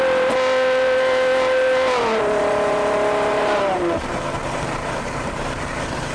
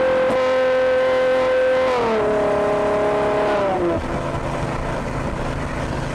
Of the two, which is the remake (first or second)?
first